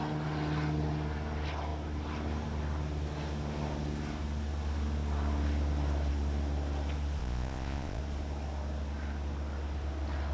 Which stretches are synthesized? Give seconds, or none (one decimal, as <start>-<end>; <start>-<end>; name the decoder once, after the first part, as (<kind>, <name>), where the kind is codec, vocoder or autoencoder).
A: 7.2-8.0 (vocoder, Vocos)